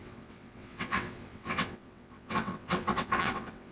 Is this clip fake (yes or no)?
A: yes